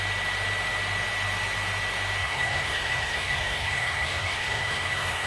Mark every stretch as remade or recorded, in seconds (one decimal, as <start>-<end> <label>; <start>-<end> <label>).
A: 0.0-2.2 recorded; 2.2-5.3 remade